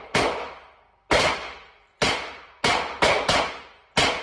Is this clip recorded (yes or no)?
yes